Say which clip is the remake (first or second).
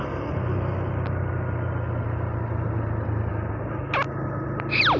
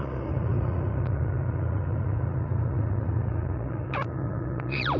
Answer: second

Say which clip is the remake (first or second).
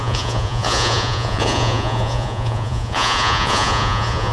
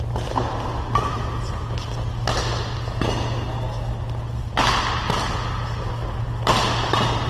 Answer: first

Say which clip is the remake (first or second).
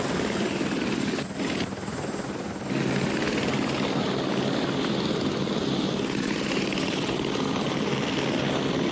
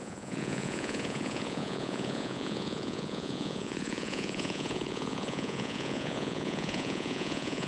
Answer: second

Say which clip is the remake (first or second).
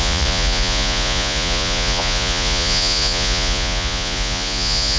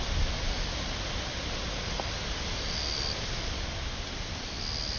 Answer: first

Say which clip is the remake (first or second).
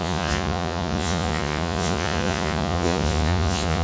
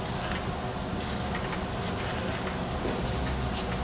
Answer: first